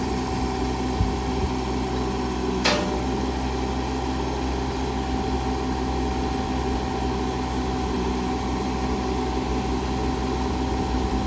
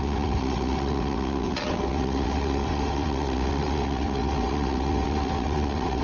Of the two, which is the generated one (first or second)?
second